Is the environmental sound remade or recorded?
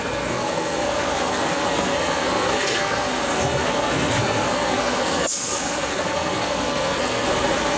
remade